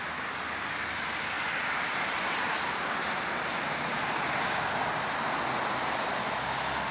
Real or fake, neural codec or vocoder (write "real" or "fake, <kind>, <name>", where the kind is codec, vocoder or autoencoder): real